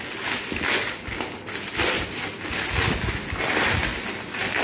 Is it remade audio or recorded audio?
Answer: recorded